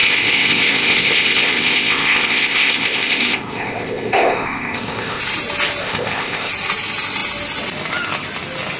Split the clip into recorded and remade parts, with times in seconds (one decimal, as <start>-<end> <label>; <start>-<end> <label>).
0.0-5.2 remade; 5.2-5.8 recorded; 5.8-6.5 remade; 6.5-8.8 recorded